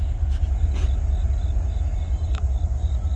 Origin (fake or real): real